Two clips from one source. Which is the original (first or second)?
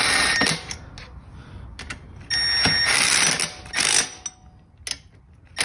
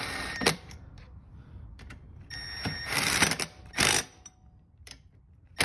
first